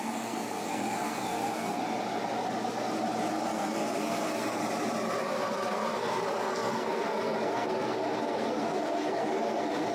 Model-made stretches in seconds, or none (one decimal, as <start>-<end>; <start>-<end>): 0.0-1.8; 3.4-4.6; 5.2-9.9